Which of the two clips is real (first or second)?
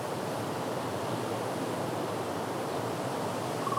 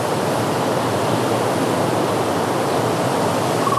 second